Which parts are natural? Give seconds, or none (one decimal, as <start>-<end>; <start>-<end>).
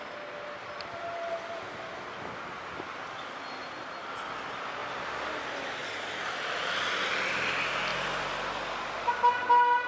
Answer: 0.0-9.9